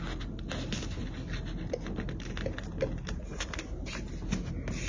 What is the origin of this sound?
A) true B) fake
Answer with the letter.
A